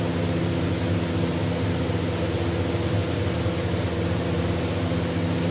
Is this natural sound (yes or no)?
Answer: yes